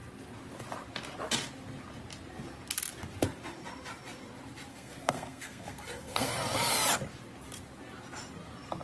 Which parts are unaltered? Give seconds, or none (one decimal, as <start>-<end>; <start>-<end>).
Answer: 0.0-4.7; 6.3-8.8